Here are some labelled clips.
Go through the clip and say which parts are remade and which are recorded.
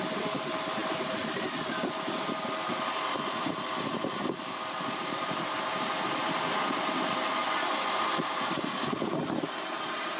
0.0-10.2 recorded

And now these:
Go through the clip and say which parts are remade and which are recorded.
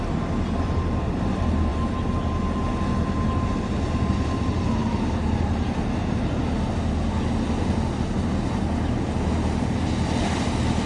0.0-10.9 recorded